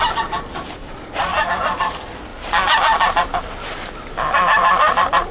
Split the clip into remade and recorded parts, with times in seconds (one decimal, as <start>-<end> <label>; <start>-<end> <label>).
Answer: 0.0-0.8 recorded; 0.8-1.3 remade; 1.3-5.3 recorded

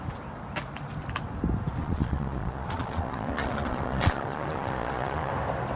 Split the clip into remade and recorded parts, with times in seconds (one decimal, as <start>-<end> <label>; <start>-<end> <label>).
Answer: 0.0-1.8 recorded; 1.8-5.3 remade; 5.3-5.8 recorded

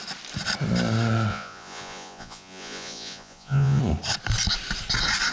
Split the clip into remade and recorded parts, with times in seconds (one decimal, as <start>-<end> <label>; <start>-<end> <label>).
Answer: 0.0-1.3 recorded; 1.3-3.8 remade; 3.8-5.3 recorded